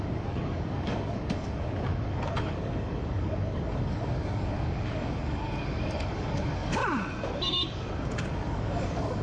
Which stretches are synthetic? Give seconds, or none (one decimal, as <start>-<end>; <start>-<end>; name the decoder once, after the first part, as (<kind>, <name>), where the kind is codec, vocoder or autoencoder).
0.0-6.8 (codec, DAC); 7.4-9.2